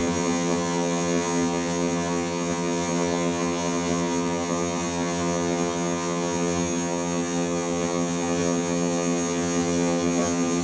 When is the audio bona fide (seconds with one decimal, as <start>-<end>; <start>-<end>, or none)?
none